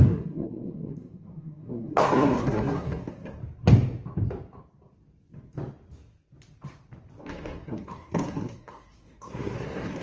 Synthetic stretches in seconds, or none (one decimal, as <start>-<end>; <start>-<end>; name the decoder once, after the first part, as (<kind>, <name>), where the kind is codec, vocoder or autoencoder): 0.0-3.4 (codec, SNAC); 7.2-10.0